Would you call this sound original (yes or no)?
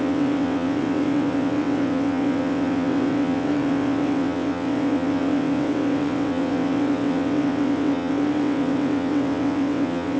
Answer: no